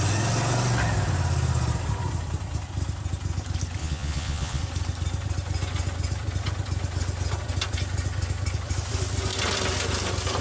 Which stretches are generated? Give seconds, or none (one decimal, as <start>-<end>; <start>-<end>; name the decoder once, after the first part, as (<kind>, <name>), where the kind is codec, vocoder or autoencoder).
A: 3.8-4.6 (vocoder, Vocos)